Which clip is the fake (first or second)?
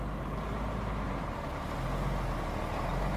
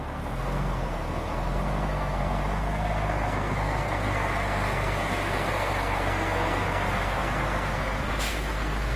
second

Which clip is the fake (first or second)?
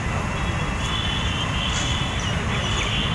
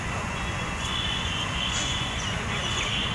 second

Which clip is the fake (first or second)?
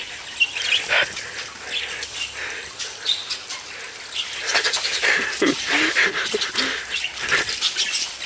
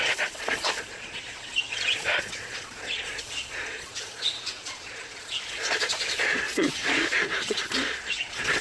second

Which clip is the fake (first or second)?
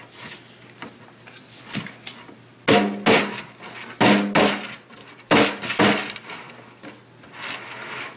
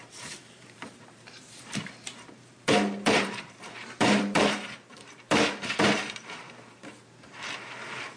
second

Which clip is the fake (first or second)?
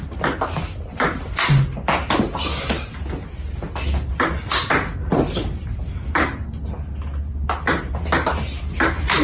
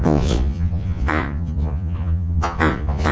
second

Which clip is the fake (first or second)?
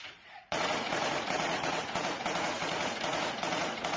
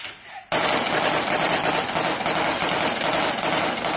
first